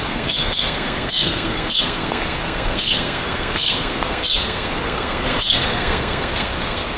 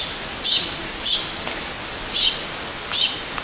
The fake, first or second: first